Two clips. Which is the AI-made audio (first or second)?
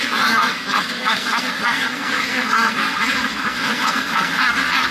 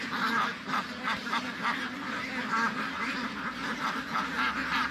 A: first